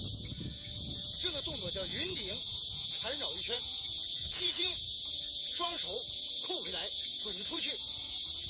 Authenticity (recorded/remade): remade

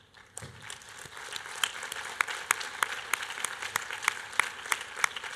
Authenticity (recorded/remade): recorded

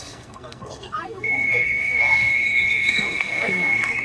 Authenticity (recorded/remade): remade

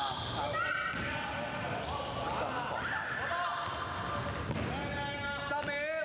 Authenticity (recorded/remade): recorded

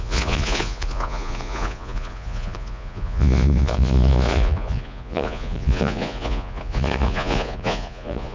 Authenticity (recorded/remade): remade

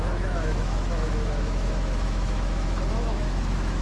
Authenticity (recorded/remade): remade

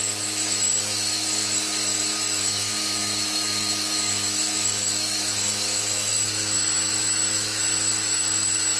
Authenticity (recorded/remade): remade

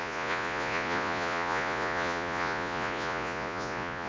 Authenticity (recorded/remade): remade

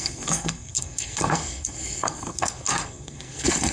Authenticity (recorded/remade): remade